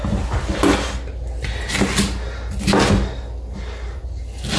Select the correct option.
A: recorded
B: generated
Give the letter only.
A